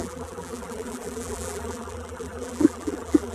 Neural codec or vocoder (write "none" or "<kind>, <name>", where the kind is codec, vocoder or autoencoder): vocoder, BigVGAN v2